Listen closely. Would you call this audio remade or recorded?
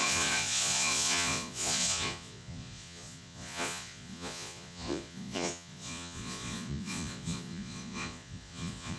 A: remade